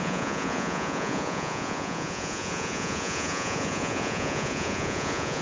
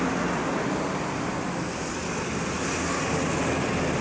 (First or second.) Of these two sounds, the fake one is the first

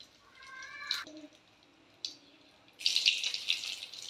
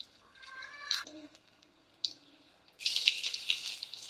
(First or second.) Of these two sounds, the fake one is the second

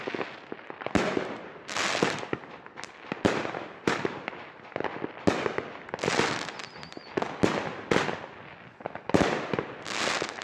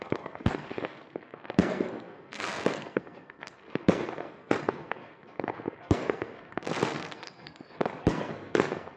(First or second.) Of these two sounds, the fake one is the second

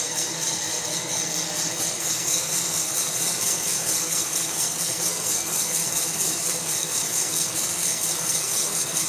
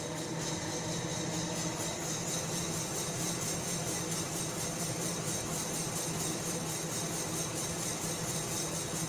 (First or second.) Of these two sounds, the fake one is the first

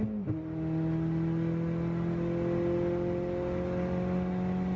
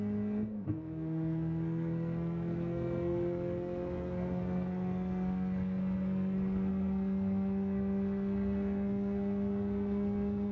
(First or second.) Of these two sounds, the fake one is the second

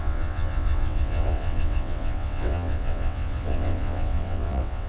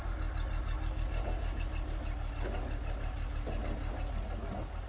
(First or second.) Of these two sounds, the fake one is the first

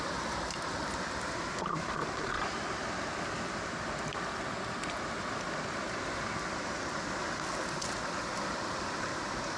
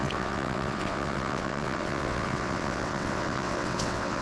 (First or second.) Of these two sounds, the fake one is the second